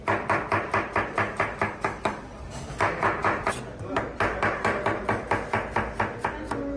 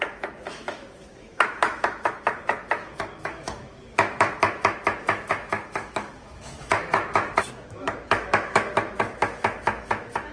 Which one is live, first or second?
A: first